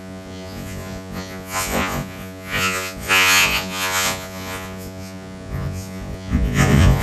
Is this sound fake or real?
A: fake